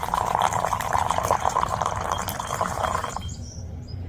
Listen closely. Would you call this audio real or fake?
fake